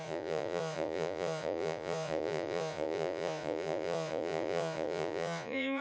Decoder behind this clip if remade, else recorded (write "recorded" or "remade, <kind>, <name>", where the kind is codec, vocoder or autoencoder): remade, vocoder, Vocos